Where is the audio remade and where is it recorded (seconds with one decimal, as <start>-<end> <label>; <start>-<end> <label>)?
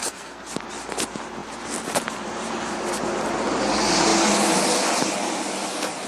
0.0-0.5 remade; 0.5-6.1 recorded